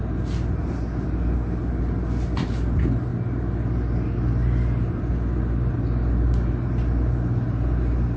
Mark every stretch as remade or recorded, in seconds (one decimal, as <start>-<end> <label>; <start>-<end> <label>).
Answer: 0.0-8.2 recorded